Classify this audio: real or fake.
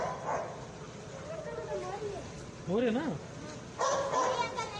real